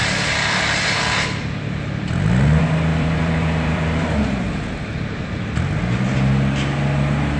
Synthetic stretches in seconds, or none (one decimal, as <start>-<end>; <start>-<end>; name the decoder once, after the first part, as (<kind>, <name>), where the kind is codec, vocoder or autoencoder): 2.9-5.4 (vocoder, BigVGAN v2)